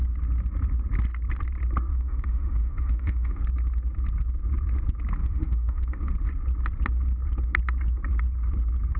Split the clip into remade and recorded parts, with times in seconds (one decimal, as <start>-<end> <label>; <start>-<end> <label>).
0.0-1.9 recorded; 1.9-3.4 remade; 3.4-5.2 recorded; 5.2-6.1 remade; 6.1-9.0 recorded